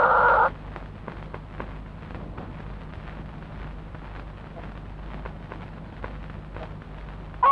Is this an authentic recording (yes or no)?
yes